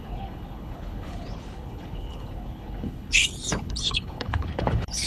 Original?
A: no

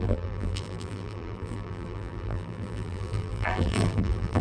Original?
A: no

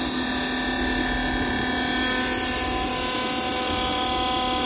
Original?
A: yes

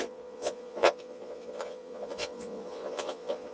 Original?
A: no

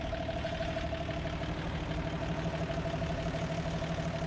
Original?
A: yes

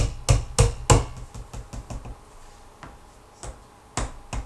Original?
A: yes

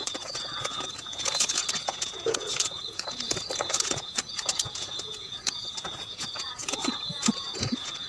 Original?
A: no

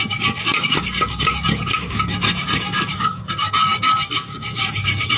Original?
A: no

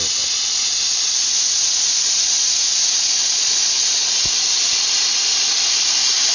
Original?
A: yes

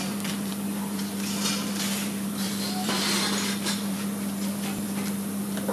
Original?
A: no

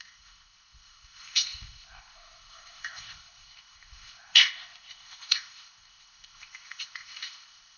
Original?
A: no